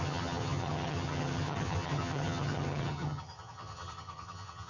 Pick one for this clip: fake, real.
fake